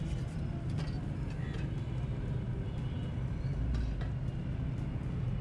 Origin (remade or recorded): recorded